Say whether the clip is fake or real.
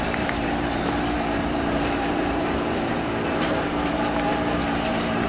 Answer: fake